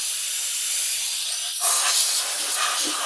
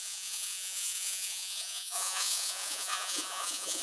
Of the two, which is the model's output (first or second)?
second